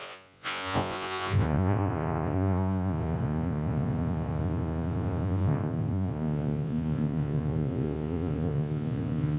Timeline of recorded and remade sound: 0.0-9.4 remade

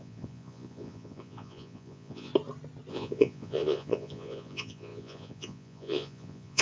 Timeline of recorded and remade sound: 0.0-2.3 remade; 2.3-2.9 recorded; 2.9-6.6 remade

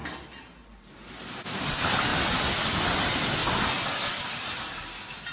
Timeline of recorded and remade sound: 0.0-5.3 recorded

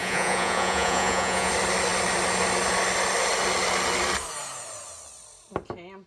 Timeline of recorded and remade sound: 0.0-1.5 remade; 1.5-6.1 recorded

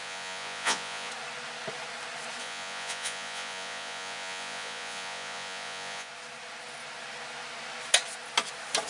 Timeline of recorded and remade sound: 0.0-1.1 remade; 1.1-2.4 recorded; 2.4-6.1 remade; 6.1-8.9 recorded